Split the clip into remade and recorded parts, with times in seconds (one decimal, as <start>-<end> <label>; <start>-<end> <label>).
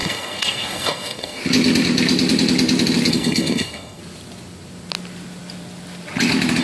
0.0-1.4 remade; 1.4-3.1 recorded; 3.1-4.0 remade; 4.0-6.6 recorded